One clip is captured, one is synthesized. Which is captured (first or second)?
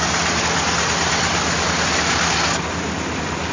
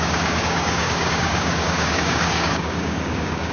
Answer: first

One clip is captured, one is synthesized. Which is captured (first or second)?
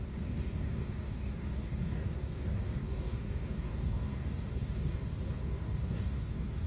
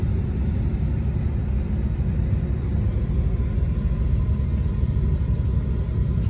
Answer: second